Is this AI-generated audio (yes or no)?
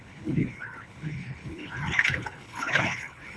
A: yes